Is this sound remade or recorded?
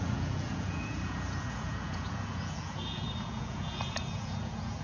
remade